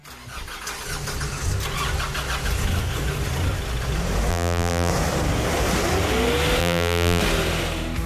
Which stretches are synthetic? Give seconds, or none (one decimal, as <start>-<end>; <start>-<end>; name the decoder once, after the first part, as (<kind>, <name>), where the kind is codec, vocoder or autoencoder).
4.3-4.9 (vocoder, BigVGAN v2); 6.6-7.2